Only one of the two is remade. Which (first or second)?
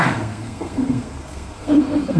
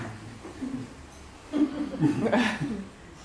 first